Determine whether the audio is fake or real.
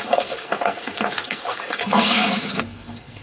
fake